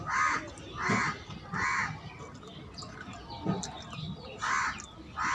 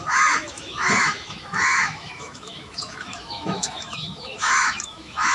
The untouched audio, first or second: first